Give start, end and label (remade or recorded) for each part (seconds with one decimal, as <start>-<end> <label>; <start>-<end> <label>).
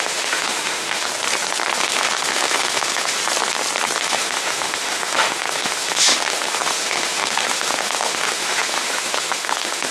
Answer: 0.0-1.1 remade; 1.1-1.8 recorded; 1.8-3.2 remade; 3.2-4.0 recorded; 4.0-9.9 remade